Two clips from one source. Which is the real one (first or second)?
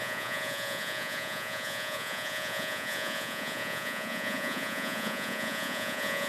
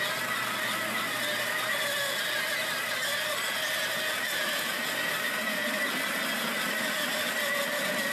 second